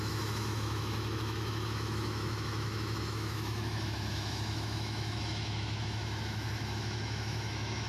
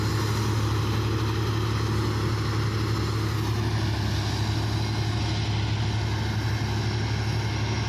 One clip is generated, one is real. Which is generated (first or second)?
first